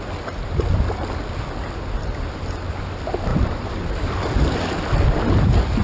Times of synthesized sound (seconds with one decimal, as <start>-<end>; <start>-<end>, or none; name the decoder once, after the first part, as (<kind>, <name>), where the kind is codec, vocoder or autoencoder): 3.3-4.0 (vocoder, BigVGAN v2)